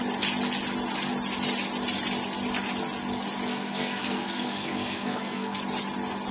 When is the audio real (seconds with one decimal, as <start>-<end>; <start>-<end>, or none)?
0.0-3.5; 5.6-6.3